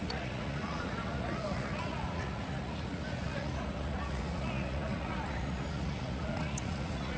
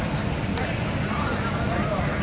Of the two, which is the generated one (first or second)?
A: first